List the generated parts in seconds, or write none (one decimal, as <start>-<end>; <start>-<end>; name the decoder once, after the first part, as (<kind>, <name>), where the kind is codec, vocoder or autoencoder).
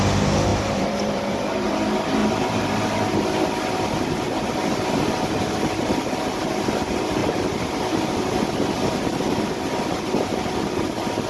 0.5-1.7 (vocoder, BigVGAN v2); 2.2-2.8; 7.2-7.8